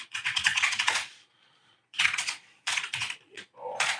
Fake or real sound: fake